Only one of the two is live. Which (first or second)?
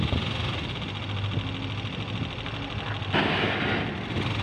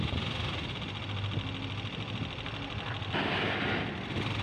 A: first